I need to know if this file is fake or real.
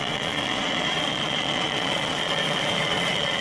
fake